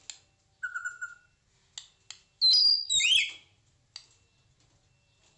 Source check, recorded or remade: recorded